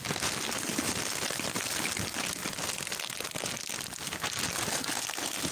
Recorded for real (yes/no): yes